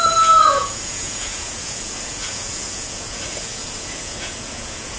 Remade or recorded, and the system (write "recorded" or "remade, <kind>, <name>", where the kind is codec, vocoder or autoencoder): remade, vocoder, Vocos